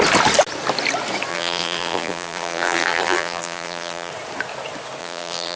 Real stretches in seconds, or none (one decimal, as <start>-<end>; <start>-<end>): 0.0-1.3; 4.1-5.0